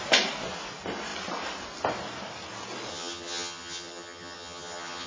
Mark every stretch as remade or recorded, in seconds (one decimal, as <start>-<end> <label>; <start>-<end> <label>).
0.0-2.9 recorded; 2.9-5.1 remade